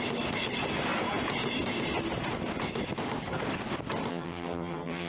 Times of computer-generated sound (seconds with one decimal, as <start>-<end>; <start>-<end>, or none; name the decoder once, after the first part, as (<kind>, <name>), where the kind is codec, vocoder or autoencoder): 4.1-5.1 (vocoder, HiFi-GAN)